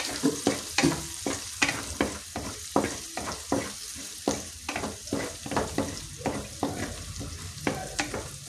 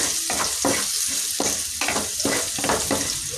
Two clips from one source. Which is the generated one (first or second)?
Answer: first